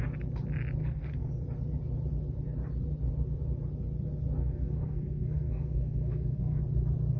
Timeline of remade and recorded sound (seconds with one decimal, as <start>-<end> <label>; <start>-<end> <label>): 0.0-0.8 recorded; 0.8-1.3 remade; 1.3-4.4 recorded; 4.4-6.6 remade; 6.6-7.2 recorded